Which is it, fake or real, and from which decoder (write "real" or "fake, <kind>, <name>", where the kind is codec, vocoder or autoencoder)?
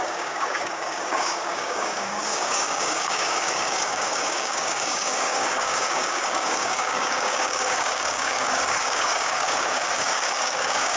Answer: fake, codec, DAC